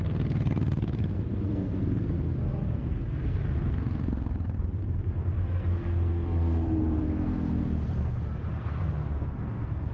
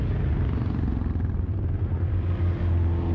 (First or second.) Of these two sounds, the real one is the second